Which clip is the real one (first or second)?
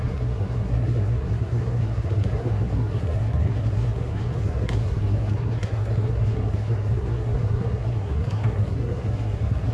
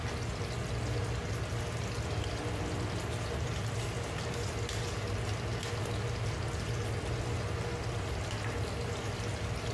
second